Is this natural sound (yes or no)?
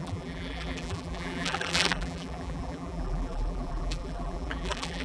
no